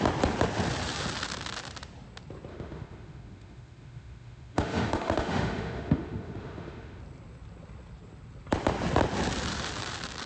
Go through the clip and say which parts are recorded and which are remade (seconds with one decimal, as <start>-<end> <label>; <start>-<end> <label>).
0.0-2.5 recorded; 2.5-7.0 remade; 7.0-10.3 recorded